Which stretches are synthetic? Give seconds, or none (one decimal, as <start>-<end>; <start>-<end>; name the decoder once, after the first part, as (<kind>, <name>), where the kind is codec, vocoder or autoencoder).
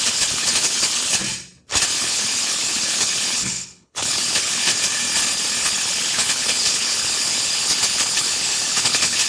0.0-1.2 (codec, HILCodec); 2.0-4.7; 5.6-9.3